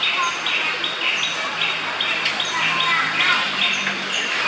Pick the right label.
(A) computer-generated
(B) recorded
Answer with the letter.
B